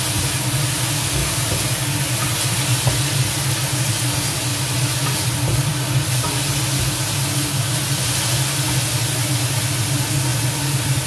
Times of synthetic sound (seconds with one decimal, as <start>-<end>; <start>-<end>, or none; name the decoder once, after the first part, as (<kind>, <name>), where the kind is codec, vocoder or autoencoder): 4.5-6.4 (vocoder, BigVGAN v2); 10.3-11.1